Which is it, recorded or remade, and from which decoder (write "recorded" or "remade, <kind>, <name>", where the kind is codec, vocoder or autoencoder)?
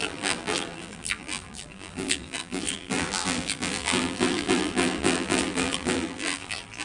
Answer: remade, vocoder, BigVGAN v2